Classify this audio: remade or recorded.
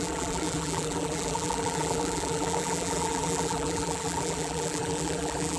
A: remade